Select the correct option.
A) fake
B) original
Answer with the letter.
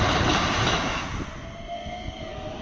B